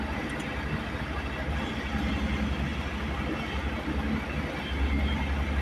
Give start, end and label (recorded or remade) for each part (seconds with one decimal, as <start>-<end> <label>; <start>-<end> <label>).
0.0-5.6 recorded